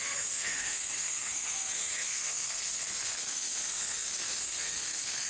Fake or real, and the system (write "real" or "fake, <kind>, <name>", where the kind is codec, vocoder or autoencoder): fake, codec, SNAC